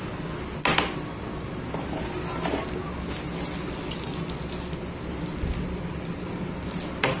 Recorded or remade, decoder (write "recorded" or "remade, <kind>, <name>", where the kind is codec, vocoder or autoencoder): recorded